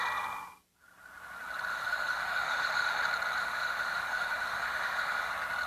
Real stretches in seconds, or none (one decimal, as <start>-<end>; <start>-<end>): 0.0-1.7; 3.0-3.4; 5.3-5.7